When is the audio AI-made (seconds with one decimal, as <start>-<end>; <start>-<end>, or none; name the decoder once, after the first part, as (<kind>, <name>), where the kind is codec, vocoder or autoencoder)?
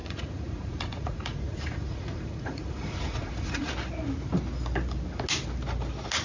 0.0-3.7 (vocoder, Vocos)